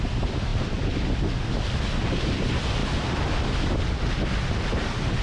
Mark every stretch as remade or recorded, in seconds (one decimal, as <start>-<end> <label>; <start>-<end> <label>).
0.0-2.8 recorded; 2.8-3.8 remade; 3.8-5.2 recorded